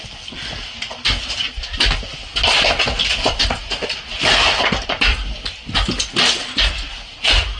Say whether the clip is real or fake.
real